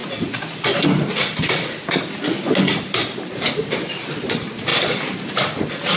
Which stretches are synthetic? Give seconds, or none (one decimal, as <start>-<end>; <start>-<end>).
none